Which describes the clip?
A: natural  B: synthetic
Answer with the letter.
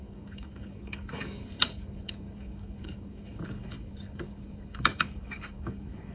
B